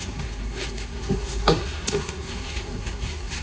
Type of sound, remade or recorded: remade